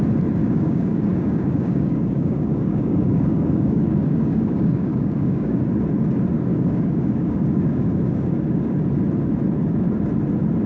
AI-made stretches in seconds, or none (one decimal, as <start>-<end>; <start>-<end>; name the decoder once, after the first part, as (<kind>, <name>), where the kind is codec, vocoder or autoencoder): 0.4-5.6 (codec, DAC); 6.5-8.8